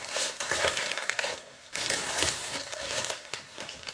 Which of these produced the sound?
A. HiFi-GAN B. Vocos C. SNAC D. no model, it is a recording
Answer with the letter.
C